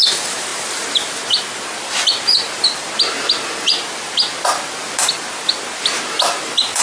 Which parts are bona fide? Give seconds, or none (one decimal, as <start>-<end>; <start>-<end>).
0.0-6.8